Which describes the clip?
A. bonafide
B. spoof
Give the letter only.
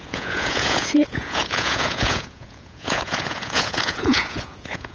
B